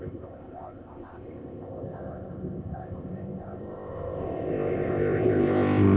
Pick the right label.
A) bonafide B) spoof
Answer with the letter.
B